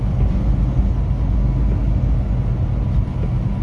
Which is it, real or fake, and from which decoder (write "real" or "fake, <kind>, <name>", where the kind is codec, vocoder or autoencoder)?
real